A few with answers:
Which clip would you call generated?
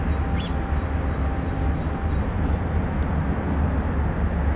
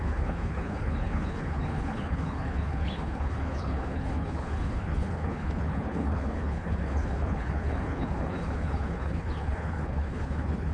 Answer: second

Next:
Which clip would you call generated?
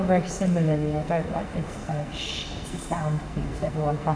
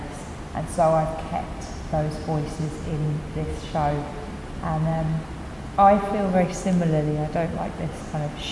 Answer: first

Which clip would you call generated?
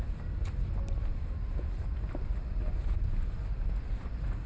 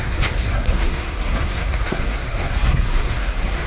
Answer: second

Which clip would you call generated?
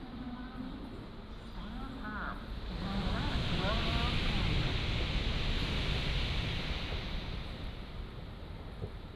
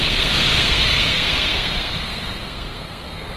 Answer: second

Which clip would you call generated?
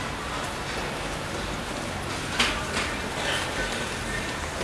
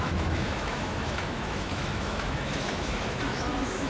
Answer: second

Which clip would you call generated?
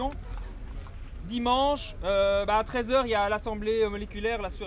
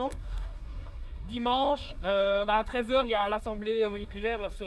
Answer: second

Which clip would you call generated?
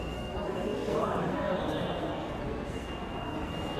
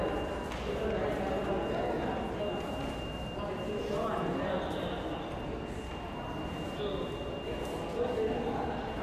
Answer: first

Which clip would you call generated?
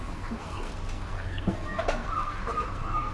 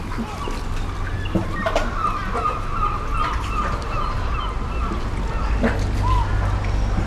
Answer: first